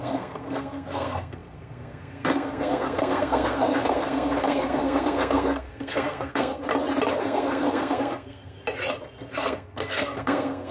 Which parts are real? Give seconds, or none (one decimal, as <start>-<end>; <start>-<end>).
6.7-7.2; 8.6-9.3